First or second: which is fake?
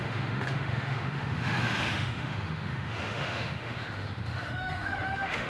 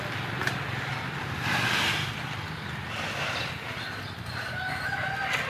first